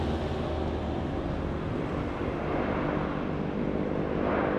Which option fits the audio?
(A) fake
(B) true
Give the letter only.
B